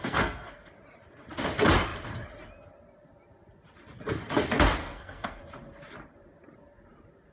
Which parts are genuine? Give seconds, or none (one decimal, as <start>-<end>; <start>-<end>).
0.7-4.8; 5.4-7.3